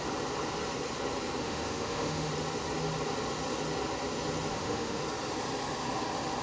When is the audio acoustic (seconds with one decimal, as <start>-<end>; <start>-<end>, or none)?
0.0-1.4; 2.3-4.5; 5.0-6.4